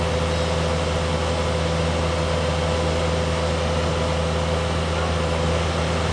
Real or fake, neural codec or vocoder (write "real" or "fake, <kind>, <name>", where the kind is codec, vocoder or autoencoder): real